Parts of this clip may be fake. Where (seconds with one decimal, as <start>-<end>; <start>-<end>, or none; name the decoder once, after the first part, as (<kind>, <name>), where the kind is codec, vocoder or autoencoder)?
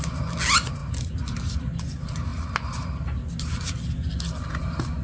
none